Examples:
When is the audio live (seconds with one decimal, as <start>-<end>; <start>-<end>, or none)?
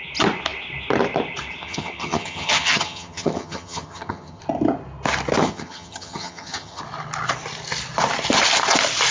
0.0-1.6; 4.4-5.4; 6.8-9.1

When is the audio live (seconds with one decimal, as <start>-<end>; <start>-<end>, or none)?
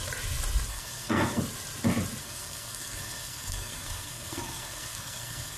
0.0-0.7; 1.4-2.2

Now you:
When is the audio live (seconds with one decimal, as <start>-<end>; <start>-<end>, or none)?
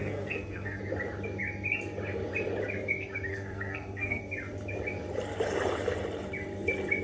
0.8-3.3; 4.2-7.0